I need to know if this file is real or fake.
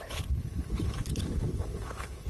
fake